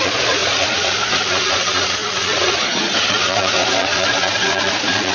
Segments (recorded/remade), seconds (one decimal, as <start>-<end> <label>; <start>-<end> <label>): 0.0-5.1 remade